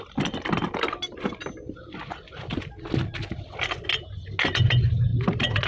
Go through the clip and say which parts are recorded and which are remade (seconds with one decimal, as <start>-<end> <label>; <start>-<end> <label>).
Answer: 0.0-5.7 recorded